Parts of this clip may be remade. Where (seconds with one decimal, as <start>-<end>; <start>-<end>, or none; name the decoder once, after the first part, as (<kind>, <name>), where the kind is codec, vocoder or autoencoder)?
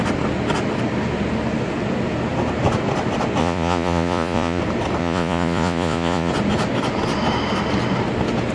3.4-4.6 (vocoder, Vocos); 5.0-6.3